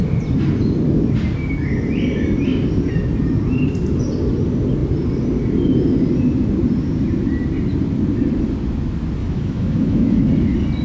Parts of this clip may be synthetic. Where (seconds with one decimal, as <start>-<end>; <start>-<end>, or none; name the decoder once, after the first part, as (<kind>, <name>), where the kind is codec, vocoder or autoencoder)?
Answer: 9.2-10.3 (autoencoder, DAC-VAE)